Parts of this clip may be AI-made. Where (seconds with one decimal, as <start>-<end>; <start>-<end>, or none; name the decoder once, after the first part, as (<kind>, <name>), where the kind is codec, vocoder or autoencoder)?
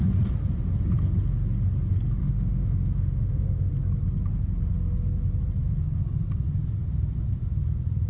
2.2-3.7 (autoencoder, DAC-VAE)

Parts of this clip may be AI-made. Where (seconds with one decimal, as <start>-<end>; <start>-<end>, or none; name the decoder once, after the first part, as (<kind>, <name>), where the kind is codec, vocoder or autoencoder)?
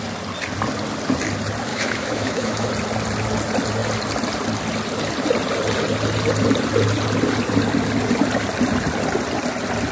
1.7-2.7 (autoencoder, DAC-VAE)